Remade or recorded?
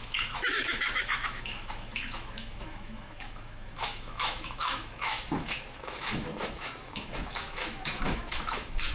remade